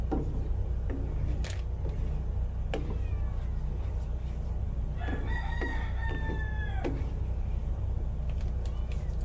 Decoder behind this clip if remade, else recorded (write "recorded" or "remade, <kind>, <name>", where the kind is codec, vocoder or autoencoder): recorded